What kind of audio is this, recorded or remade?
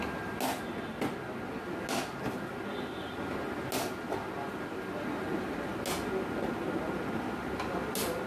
recorded